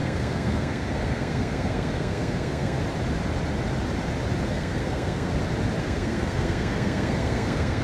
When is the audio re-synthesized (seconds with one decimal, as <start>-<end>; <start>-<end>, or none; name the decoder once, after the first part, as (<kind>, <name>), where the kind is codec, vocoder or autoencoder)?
0.0-2.8 (codec, SNAC); 4.5-5.3; 5.8-7.8